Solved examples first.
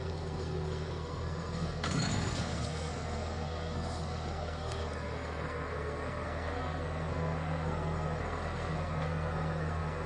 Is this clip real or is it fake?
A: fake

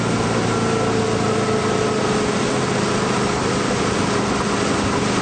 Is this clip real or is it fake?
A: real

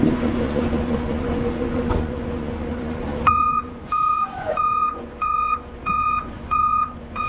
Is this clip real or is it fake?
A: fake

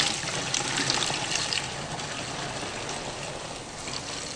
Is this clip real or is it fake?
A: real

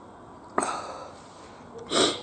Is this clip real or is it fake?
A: real